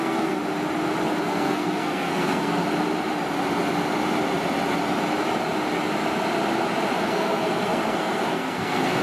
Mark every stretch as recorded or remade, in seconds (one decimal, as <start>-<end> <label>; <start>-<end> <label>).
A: 0.0-0.4 remade; 0.4-1.2 recorded; 1.2-2.6 remade; 2.6-7.0 recorded; 7.0-9.0 remade